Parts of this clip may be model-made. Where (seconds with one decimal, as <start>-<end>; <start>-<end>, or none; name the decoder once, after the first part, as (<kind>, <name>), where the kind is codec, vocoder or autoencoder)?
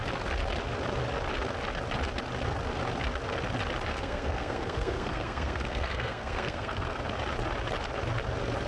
3.9-7.0 (codec, SNAC)